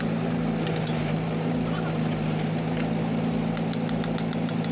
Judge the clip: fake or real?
real